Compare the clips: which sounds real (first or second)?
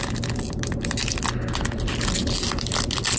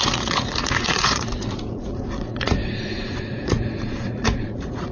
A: first